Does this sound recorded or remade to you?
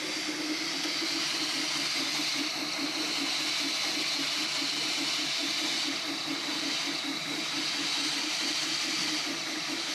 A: recorded